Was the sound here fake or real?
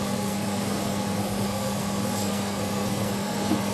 fake